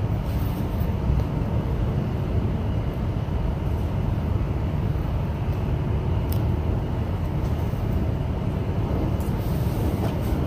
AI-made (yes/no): no